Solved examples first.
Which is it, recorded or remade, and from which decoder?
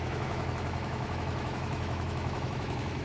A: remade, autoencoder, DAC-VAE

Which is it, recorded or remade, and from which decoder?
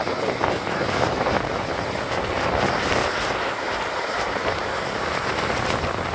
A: recorded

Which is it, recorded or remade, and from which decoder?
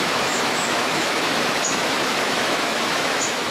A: remade, autoencoder, DAC-VAE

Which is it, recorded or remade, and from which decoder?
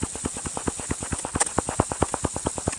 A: recorded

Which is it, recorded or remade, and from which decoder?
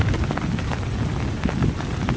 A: recorded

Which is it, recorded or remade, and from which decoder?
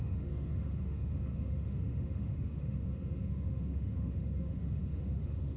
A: remade, autoencoder, DAC-VAE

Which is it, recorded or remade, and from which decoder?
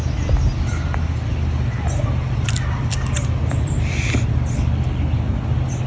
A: recorded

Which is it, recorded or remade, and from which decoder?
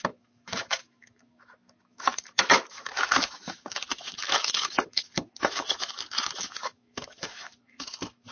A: remade, autoencoder, DAC-VAE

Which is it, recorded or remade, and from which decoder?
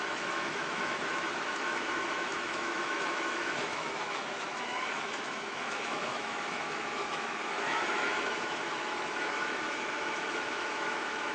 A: remade, autoencoder, DAC-VAE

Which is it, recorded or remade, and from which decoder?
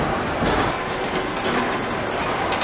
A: recorded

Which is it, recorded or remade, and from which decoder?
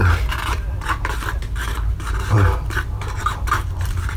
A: recorded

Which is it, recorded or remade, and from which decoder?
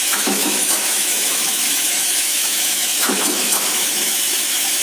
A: remade, autoencoder, DAC-VAE